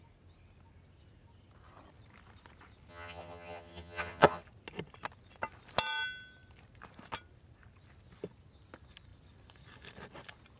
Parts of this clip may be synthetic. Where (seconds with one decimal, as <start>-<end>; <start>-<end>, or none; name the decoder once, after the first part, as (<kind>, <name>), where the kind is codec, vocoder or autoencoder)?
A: 2.9-4.4 (vocoder, HiFi-GAN)